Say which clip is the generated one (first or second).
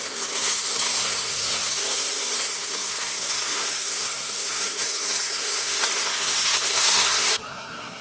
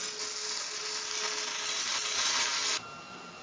first